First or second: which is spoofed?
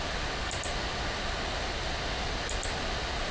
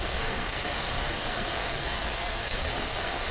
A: second